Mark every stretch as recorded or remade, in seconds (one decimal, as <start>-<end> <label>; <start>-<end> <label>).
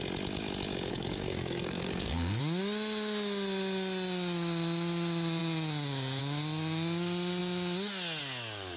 0.0-0.9 recorded; 0.9-2.4 remade; 2.4-8.8 recorded